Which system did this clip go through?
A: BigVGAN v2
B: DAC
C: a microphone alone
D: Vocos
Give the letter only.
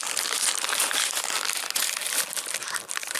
C